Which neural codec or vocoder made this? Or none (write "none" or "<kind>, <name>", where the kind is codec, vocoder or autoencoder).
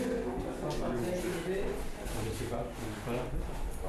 none